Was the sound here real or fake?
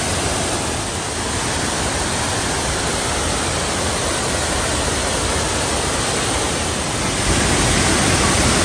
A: real